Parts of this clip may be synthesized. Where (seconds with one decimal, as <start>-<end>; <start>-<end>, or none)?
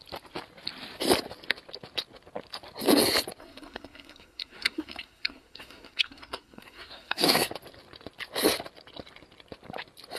3.4-7.5